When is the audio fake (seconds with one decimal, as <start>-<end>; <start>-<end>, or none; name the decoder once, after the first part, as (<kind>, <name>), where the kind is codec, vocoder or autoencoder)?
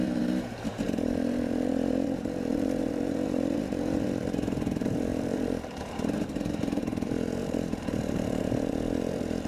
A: 0.0-9.5 (vocoder, BigVGAN v2)